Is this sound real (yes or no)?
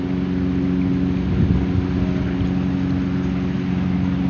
yes